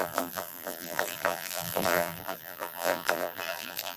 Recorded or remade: remade